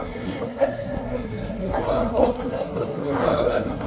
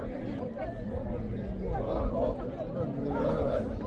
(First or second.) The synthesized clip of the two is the first